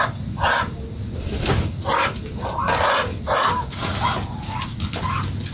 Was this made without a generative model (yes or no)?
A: yes